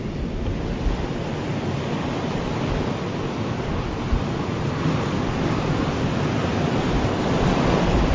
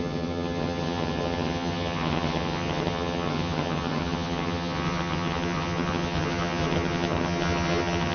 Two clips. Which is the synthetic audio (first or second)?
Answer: second